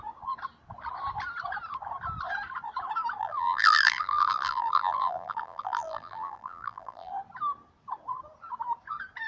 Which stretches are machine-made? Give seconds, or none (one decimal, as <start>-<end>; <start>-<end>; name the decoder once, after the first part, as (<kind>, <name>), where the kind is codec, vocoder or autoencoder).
3.2-7.1 (vocoder, BigVGAN v2)